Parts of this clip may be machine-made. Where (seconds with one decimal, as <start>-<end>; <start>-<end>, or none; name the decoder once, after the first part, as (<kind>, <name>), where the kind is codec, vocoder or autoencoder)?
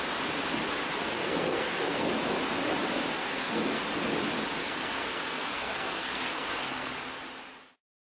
1.0-2.1 (codec, SNAC); 3.1-3.8; 4.6-6.9